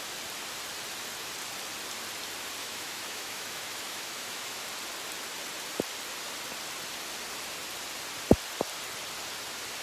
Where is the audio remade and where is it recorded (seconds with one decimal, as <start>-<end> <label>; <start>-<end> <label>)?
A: 0.0-2.6 recorded; 2.6-4.6 remade; 4.6-9.8 recorded